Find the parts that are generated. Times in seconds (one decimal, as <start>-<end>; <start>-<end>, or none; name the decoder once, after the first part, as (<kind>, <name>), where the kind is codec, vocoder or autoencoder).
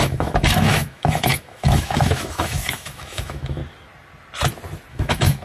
0.0-3.6 (autoencoder, DAC-VAE); 4.9-5.4